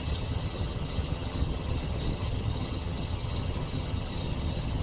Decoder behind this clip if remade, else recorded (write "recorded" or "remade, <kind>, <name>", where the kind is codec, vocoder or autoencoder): remade, vocoder, HiFi-GAN